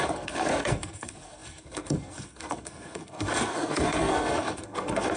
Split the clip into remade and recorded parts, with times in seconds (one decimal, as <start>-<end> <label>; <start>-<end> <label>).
0.0-5.2 remade